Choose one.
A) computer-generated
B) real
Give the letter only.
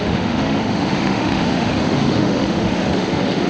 A